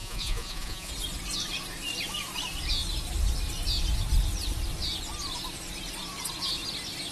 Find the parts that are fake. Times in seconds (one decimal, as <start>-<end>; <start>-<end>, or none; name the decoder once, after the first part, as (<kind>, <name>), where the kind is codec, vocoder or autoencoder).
0.0-0.9 (vocoder, Vocos)